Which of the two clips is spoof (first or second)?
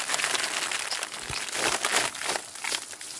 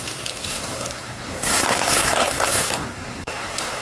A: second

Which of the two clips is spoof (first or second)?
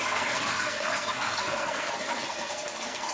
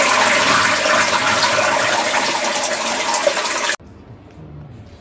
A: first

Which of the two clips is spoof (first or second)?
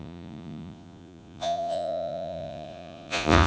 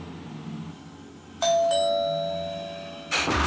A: first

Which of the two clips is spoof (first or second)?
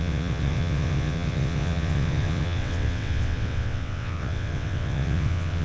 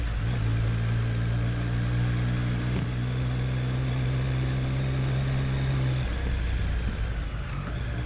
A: first